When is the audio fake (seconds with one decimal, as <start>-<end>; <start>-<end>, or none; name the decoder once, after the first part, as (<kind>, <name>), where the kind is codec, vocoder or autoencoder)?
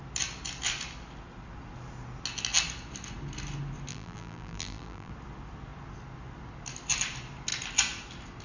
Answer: 3.9-5.1 (vocoder, BigVGAN v2)